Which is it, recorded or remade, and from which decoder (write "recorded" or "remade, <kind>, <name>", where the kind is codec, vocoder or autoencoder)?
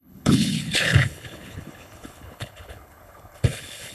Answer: remade, codec, HILCodec